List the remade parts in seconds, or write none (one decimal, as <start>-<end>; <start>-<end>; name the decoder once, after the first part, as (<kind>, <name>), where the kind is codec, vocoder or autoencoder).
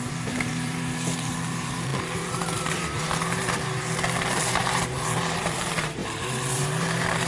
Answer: 0.0-7.3 (vocoder, BigVGAN v2)